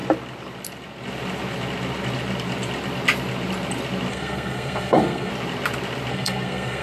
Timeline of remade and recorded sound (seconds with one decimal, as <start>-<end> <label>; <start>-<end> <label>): 0.0-4.1 recorded; 4.1-5.3 remade; 5.3-6.1 recorded; 6.1-6.8 remade